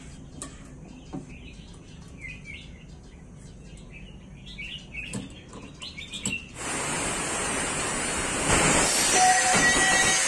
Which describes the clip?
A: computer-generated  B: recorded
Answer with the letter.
B